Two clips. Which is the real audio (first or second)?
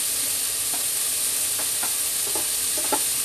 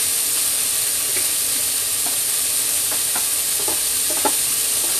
first